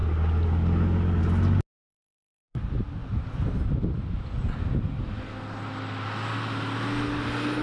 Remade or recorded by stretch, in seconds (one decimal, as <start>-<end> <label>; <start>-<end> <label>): 0.0-1.9 recorded; 1.9-2.6 remade; 2.6-7.6 recorded